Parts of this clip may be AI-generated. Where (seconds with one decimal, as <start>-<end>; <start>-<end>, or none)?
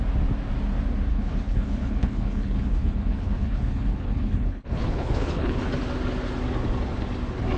1.1-5.6